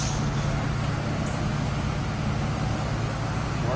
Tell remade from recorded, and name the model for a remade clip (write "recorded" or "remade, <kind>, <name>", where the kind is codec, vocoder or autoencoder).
recorded